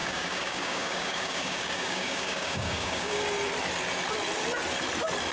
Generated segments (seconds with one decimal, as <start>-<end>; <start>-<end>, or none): 0.0-3.2